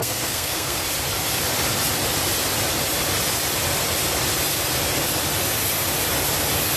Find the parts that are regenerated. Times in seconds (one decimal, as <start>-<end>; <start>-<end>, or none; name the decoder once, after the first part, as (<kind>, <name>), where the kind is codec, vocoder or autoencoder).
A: 0.0-0.8 (codec, SNAC)